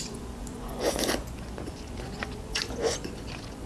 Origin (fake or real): fake